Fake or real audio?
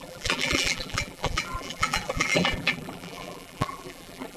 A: fake